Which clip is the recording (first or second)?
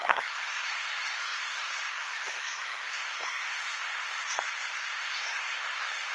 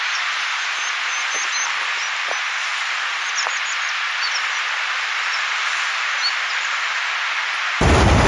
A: second